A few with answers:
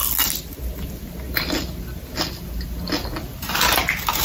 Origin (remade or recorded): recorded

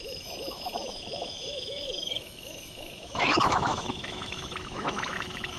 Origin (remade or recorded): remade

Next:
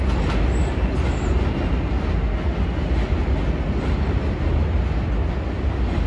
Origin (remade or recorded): recorded